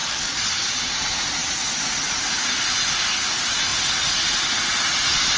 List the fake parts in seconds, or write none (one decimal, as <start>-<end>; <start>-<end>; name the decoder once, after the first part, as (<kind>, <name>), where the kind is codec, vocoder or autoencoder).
0.0-0.8 (codec, DAC)